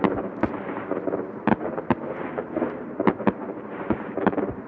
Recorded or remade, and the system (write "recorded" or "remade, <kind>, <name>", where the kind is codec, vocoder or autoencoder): remade, vocoder, BigVGAN v2